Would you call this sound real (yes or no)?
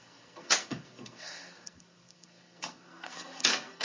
no